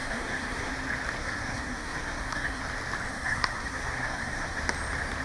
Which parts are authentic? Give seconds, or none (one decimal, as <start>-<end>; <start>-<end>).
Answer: 0.7-1.2; 2.6-3.1; 4.6-5.2